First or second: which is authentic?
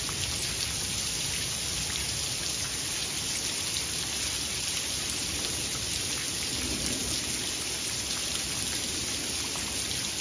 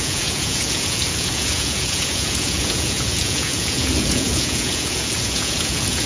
first